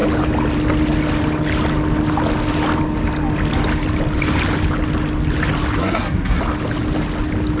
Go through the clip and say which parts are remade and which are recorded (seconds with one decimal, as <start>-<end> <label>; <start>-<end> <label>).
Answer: 0.0-5.8 recorded; 5.8-6.4 remade; 6.4-7.6 recorded

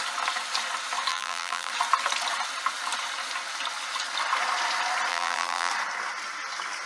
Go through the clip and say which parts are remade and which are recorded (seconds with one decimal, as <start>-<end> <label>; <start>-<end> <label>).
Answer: 0.0-1.1 recorded; 1.1-1.7 remade; 1.7-5.1 recorded; 5.1-5.7 remade; 5.7-6.9 recorded